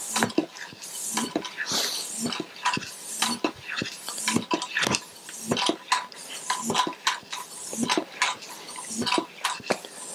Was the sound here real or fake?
real